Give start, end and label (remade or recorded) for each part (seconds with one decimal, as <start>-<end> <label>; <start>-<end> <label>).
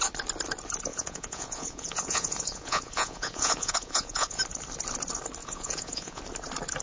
0.0-0.9 recorded; 0.9-4.4 remade; 4.4-5.4 recorded; 5.4-6.2 remade; 6.2-6.8 recorded